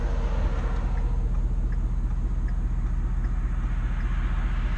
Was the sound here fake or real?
real